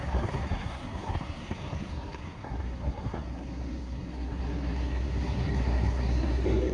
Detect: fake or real fake